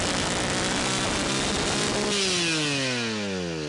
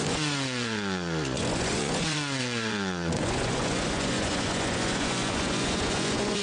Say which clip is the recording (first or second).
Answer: first